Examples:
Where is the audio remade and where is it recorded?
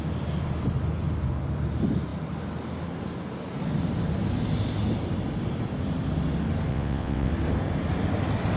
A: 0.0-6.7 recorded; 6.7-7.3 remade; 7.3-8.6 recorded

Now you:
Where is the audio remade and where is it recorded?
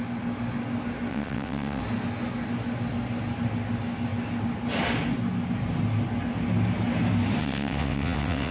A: 0.0-1.1 recorded; 1.1-1.8 remade; 1.8-7.4 recorded; 7.4-8.5 remade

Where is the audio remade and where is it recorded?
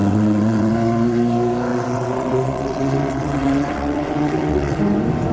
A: 0.0-0.7 remade; 0.7-1.7 recorded; 1.7-4.8 remade; 4.8-5.3 recorded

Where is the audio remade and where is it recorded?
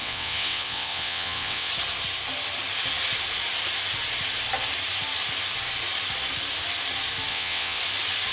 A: 0.0-1.7 remade; 1.7-7.3 recorded; 7.3-7.8 remade; 7.8-8.3 recorded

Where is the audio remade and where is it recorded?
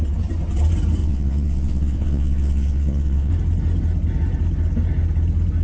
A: 0.0-1.0 recorded; 1.0-3.3 remade; 3.3-5.6 recorded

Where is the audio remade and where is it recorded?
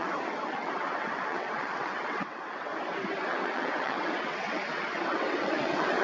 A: 0.0-2.7 remade; 2.7-3.2 recorded; 3.2-6.0 remade